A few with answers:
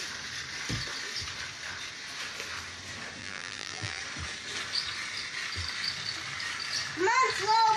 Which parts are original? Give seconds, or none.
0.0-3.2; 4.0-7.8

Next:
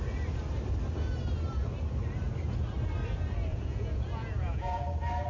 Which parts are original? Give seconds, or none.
0.0-3.5; 4.8-5.3